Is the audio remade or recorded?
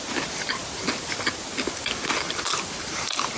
recorded